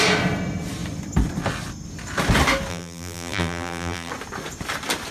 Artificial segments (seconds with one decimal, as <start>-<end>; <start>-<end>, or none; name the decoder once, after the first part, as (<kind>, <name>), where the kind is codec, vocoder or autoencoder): 2.7-4.1 (vocoder, BigVGAN v2)